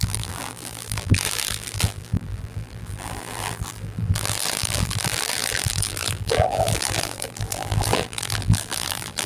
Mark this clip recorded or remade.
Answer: remade